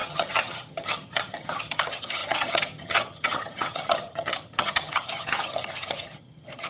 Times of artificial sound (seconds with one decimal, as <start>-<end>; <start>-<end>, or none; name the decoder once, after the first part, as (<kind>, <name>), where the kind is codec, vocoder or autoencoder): 0.0-6.7 (vocoder, HiFi-GAN)